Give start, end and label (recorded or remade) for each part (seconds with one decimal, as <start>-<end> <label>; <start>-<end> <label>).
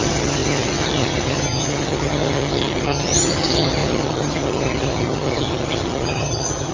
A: 0.0-6.7 remade